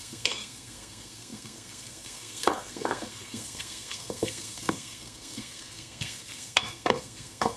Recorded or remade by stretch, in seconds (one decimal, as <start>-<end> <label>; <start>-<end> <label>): 0.0-7.6 remade